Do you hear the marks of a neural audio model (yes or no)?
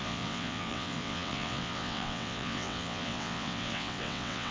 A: yes